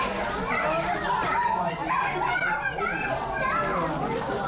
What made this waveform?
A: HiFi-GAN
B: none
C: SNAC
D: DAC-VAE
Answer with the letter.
B